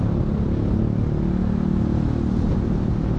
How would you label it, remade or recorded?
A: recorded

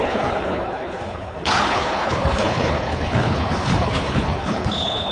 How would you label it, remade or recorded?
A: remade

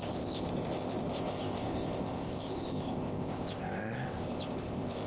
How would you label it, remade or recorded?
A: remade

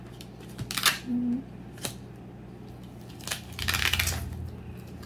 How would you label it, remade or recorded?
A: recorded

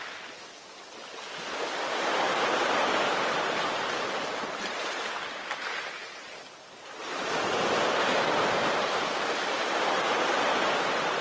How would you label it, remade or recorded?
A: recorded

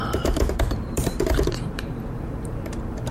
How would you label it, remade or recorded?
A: remade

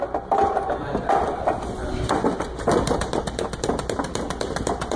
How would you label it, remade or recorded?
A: recorded